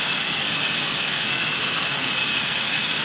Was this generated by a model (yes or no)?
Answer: yes